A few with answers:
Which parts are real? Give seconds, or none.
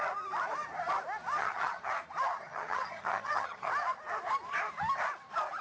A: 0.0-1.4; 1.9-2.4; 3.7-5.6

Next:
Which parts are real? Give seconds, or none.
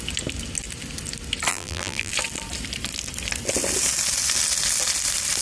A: 0.0-1.5; 2.1-5.4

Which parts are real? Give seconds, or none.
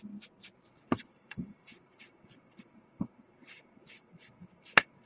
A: 0.0-1.1; 1.7-5.1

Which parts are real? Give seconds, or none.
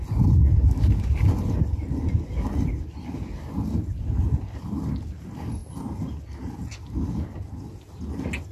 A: 0.0-8.5